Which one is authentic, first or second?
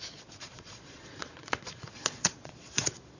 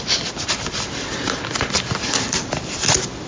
second